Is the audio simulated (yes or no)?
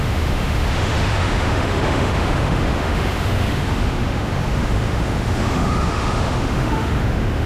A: yes